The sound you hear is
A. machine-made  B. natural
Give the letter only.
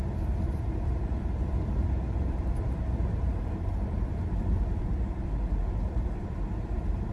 A